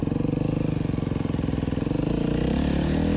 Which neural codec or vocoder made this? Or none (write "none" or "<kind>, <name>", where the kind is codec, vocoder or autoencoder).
none